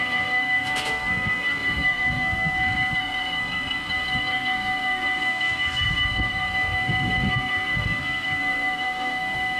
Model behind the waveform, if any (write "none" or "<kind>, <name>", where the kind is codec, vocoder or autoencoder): codec, SNAC